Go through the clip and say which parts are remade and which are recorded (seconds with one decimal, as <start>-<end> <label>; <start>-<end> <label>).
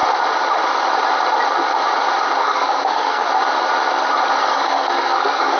0.0-2.4 recorded; 2.4-3.3 remade; 3.3-4.4 recorded; 4.4-5.6 remade